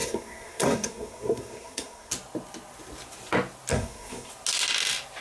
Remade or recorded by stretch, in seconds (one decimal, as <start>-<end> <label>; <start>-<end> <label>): 0.0-2.1 remade; 2.1-3.7 recorded; 3.7-4.3 remade; 4.3-5.2 recorded